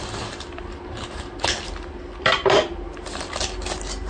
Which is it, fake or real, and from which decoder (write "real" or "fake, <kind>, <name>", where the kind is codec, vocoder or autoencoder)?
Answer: real